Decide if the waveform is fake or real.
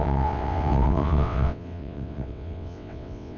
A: fake